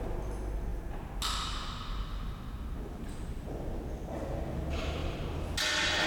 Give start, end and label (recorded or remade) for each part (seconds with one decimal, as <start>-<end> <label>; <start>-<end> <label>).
0.0-6.1 recorded